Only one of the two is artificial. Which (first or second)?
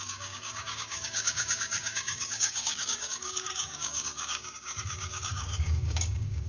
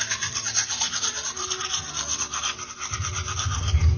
first